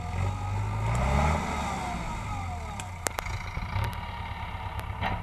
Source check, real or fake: real